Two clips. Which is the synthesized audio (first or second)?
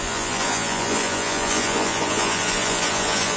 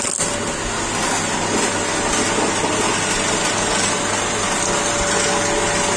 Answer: first